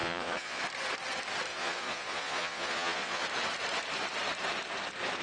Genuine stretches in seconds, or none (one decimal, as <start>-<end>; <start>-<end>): 0.6-1.5; 3.2-5.2